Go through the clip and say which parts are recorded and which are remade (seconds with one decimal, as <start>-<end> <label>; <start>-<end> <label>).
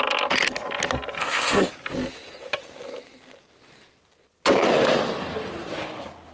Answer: 0.0-1.2 recorded; 1.2-1.7 remade; 1.7-6.3 recorded